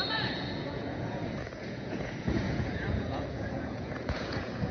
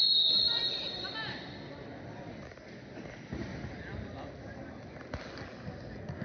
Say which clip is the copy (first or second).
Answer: first